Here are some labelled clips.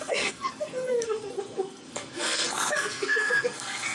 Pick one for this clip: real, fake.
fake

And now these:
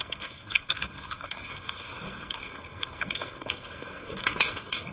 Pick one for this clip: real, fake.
fake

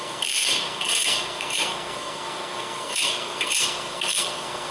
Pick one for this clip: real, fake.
fake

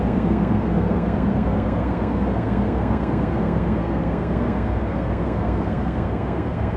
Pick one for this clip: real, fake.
fake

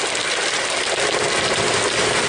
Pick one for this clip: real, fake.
real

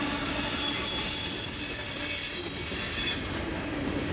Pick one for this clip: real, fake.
real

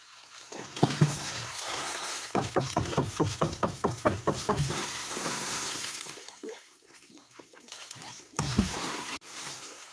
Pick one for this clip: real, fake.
fake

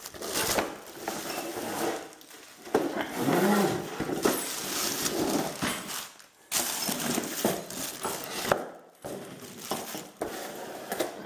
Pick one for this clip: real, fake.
real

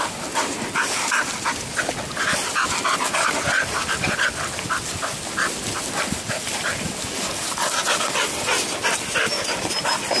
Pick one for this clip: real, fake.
real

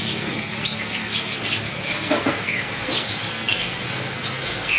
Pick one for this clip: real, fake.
fake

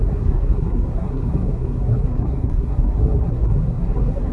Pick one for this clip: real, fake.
fake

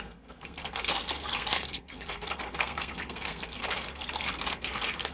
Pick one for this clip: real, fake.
fake